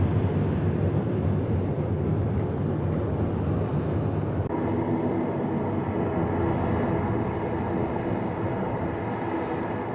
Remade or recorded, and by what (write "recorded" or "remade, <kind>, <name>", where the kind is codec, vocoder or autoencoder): recorded